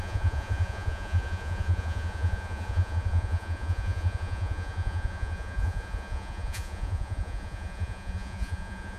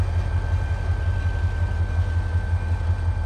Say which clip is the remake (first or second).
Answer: first